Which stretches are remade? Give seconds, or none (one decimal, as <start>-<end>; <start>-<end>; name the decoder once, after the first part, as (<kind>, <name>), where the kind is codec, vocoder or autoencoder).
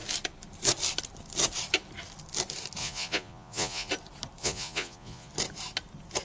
2.8-3.9 (vocoder, Vocos); 4.4-5.3